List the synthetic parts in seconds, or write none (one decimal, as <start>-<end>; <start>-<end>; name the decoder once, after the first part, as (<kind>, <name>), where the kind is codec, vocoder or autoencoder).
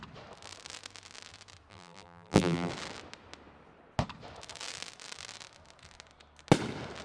1.7-2.7 (vocoder, BigVGAN v2)